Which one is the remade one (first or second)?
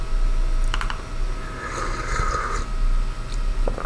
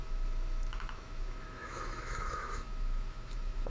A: second